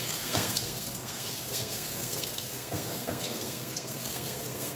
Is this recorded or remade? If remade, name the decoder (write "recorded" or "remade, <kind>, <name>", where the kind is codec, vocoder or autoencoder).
remade, codec, SNAC